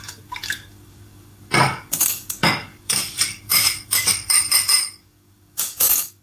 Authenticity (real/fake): fake